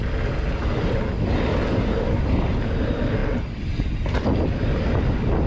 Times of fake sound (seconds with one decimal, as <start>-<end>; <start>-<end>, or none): 1.5-2.2